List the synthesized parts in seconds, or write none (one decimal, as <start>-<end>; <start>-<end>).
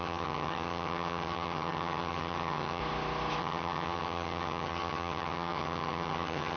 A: 0.0-2.8; 3.4-6.6